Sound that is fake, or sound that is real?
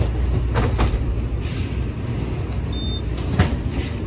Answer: real